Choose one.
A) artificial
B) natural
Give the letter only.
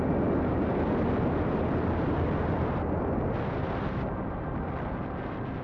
B